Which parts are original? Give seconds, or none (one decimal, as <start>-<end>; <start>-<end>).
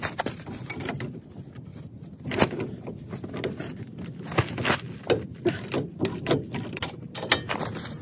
1.7-6.4